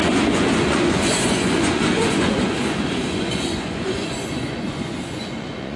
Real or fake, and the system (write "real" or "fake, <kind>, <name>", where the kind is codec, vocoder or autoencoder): fake, vocoder, Vocos